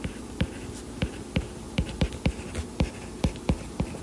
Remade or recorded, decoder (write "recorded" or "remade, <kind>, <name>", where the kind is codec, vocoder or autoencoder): recorded